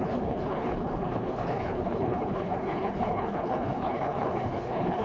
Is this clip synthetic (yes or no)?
yes